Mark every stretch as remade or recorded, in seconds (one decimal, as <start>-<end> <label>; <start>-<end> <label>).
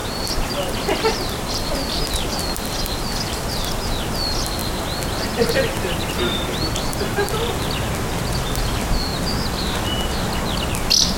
0.0-4.6 remade; 4.6-8.4 recorded; 8.4-9.1 remade; 9.1-11.2 recorded